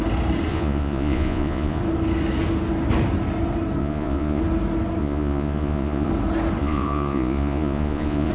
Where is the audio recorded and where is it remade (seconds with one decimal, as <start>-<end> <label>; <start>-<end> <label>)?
0.0-0.5 recorded; 0.5-1.8 remade; 1.8-3.8 recorded; 3.8-4.4 remade; 4.4-5.0 recorded; 5.0-6.1 remade; 6.1-6.6 recorded; 6.6-8.3 remade